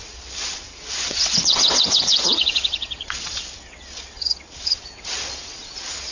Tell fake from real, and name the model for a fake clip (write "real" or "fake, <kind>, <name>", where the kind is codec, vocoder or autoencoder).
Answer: fake, vocoder, WaveNeXt